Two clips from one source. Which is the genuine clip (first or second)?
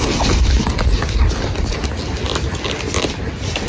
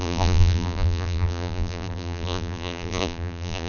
first